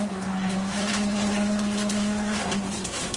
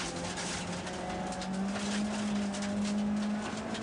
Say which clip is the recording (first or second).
second